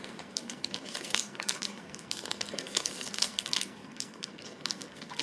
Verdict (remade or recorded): remade